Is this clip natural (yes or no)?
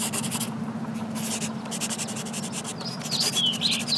yes